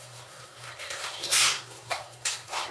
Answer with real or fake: fake